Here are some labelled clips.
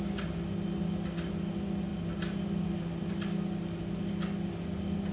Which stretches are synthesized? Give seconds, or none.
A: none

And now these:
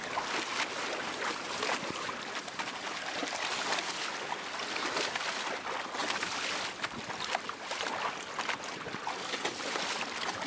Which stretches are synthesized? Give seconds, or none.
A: none

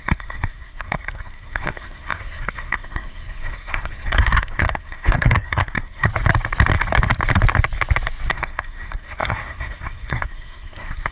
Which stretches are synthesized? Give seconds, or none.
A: 0.0-6.1 (codec, SNAC); 8.3-11.1

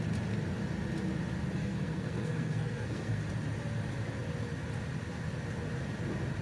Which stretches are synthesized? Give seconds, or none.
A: 1.6-3.2 (codec, SNAC)

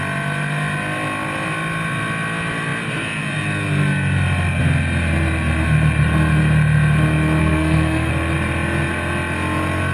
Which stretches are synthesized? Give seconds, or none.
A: 7.4-8.1 (codec, SNAC)

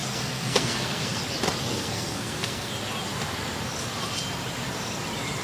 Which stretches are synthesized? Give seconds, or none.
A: 0.0-1.2 (codec, SNAC); 1.6-2.7